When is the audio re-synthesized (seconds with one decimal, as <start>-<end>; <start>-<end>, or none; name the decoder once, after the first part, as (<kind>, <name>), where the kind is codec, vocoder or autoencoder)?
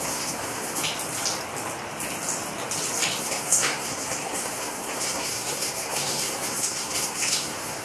0.0-0.8 (codec, SNAC); 3.2-7.8